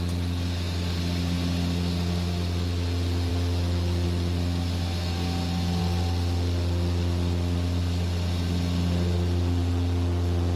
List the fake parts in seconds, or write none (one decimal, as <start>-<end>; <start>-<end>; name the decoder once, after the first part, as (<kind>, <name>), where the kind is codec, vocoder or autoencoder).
none